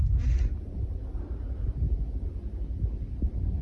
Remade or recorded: recorded